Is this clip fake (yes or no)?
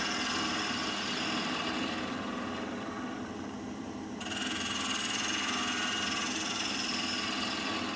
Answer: no